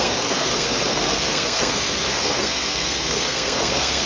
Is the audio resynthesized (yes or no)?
yes